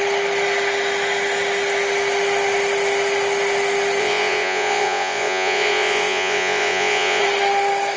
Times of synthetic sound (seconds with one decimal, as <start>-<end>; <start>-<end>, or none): 4.0-7.2